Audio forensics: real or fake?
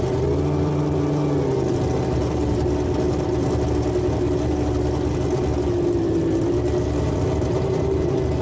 real